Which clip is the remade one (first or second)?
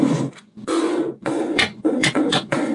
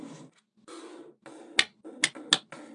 first